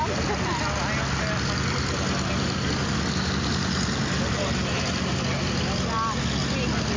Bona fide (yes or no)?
yes